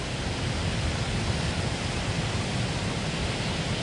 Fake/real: real